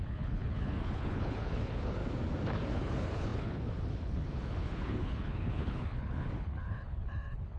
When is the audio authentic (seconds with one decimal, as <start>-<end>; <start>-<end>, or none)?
2.0-2.7